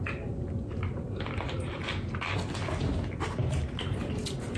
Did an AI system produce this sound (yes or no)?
no